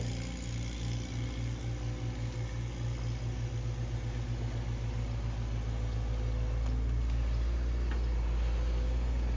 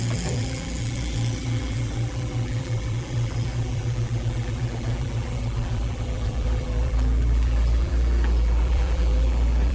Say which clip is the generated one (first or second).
second